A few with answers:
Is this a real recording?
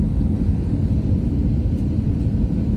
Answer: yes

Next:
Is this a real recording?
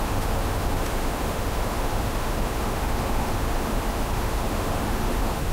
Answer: no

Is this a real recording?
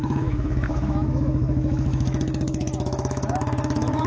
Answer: no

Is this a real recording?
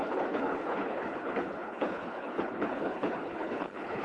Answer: no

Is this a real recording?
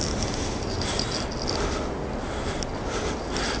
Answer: yes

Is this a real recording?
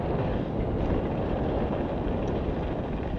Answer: yes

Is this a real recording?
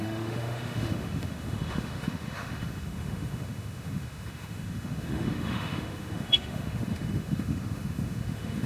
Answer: no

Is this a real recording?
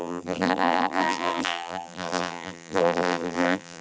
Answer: no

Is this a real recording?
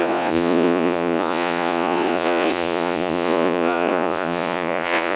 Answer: no